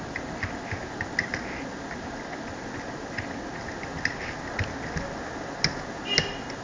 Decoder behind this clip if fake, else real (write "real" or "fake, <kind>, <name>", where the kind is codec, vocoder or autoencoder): real